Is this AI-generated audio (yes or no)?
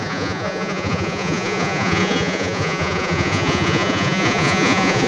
yes